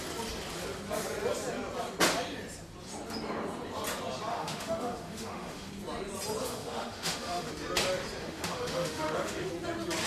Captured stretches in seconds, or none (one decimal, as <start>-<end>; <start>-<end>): 0.0-4.3; 5.7-6.4; 7.5-8.2; 9.5-10.1